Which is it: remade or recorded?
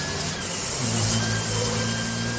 recorded